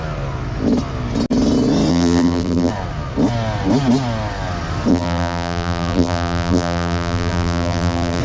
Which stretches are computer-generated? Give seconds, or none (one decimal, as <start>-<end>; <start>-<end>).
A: 1.9-2.7; 4.9-8.2